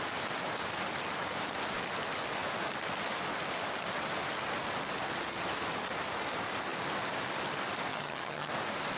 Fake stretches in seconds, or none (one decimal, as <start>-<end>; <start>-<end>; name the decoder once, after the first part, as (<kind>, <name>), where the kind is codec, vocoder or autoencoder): 7.9-8.5 (vocoder, HiFi-GAN)